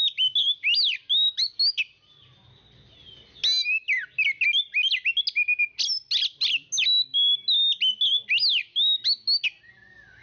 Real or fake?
real